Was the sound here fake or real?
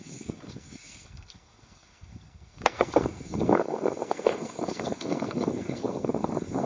fake